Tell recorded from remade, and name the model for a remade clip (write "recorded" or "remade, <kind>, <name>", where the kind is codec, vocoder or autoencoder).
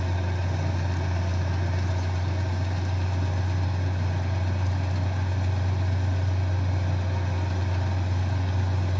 recorded